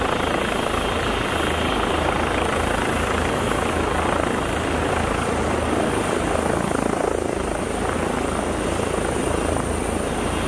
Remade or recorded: recorded